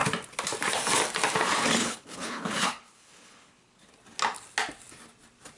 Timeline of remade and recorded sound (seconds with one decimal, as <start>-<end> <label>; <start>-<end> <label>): 0.0-1.8 recorded; 1.8-3.9 remade; 3.9-5.6 recorded